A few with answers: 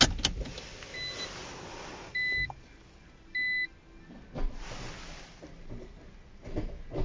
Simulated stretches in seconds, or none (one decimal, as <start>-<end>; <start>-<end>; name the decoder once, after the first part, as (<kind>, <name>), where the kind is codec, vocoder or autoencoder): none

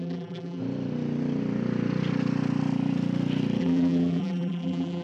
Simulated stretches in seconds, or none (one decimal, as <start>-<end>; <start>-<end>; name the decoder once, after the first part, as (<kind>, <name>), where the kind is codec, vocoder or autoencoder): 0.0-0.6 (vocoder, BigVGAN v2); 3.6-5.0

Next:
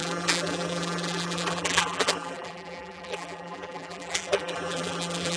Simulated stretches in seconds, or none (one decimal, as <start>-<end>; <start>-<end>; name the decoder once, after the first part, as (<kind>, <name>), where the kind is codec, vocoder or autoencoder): 0.0-5.4 (vocoder, BigVGAN v2)

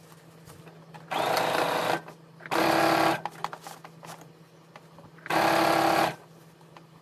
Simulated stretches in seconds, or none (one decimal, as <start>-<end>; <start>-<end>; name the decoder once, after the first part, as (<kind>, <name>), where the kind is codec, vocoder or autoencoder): none

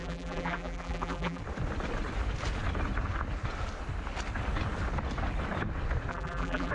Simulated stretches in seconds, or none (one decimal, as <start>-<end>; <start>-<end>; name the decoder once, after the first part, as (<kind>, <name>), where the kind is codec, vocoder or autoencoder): 0.0-1.4 (vocoder, BigVGAN v2); 6.1-6.7

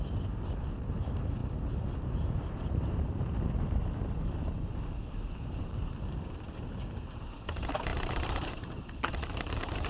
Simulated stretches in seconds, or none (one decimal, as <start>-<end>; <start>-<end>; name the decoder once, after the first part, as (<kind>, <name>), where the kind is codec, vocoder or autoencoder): 0.0-1.4 (vocoder, BigVGAN v2); 2.0-9.9